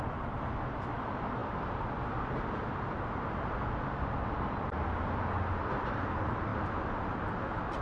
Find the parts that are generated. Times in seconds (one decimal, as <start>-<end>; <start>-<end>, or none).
none